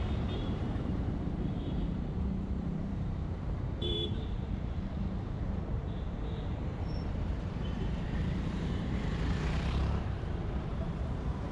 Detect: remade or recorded remade